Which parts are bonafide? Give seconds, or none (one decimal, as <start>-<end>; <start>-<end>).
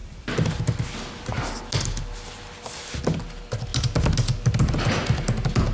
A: 0.0-5.7